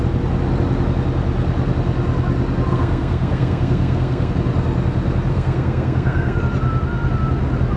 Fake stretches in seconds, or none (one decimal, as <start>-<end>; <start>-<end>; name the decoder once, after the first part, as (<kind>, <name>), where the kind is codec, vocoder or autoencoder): 2.7-4.3 (codec, SNAC); 5.3-6.4